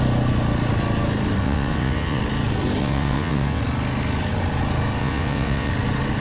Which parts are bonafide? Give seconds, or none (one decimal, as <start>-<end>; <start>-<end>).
0.0-1.4; 2.2-2.8; 3.6-5.0; 5.7-6.2